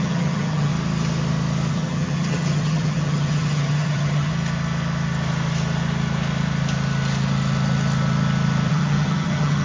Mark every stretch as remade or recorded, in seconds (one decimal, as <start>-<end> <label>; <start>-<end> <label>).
0.0-0.7 remade; 0.7-1.7 recorded; 1.7-4.3 remade; 4.3-8.7 recorded; 8.7-9.6 remade

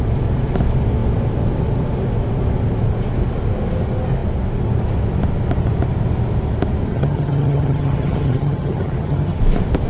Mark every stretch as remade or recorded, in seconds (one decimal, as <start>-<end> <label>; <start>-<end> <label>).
0.0-6.9 recorded; 6.9-9.4 remade; 9.4-9.9 recorded

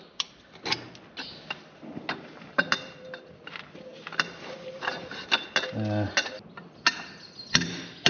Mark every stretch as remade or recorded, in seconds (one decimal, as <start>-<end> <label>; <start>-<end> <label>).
0.0-8.1 recorded

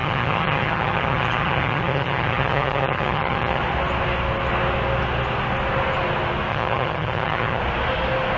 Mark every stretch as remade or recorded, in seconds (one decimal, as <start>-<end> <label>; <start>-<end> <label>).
0.0-3.6 remade; 3.6-6.5 recorded; 6.5-7.6 remade; 7.6-8.4 recorded

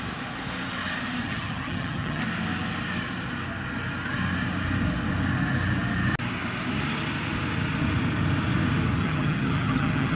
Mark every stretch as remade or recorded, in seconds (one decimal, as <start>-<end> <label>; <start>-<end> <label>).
0.0-1.2 recorded; 1.2-2.2 remade; 2.2-9.0 recorded; 9.0-10.2 remade

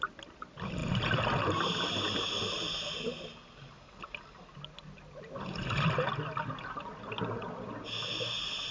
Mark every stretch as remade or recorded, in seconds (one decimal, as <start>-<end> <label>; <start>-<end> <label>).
0.0-8.7 recorded